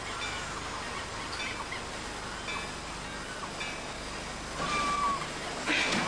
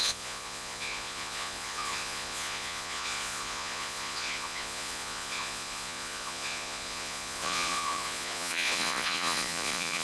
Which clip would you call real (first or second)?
first